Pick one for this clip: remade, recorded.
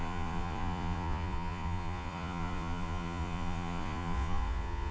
remade